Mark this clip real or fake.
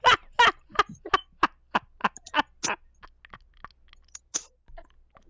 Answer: real